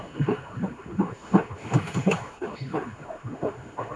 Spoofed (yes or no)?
yes